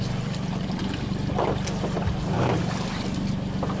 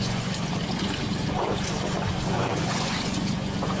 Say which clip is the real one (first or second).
first